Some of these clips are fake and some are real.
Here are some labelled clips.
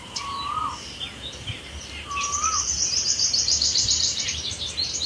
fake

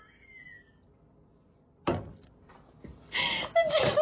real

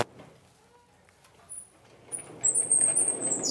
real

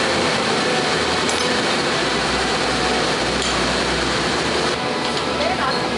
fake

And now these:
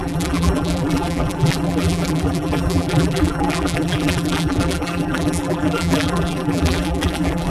fake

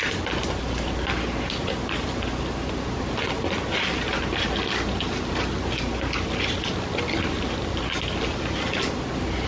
real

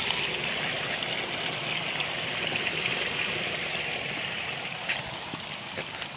real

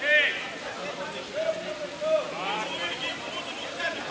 fake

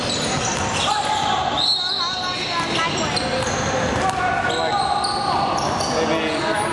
real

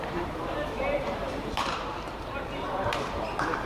fake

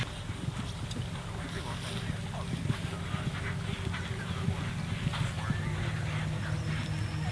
real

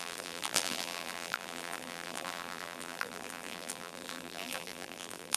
fake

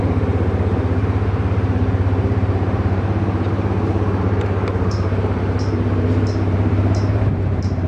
fake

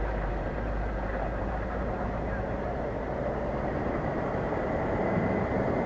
fake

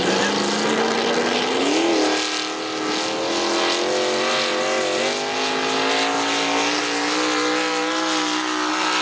real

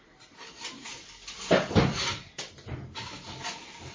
real